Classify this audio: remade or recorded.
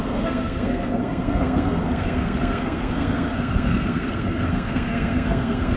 remade